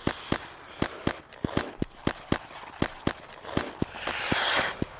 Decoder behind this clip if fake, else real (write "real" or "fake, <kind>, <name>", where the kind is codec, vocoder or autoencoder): real